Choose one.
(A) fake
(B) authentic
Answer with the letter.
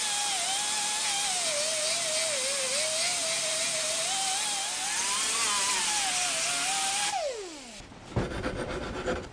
B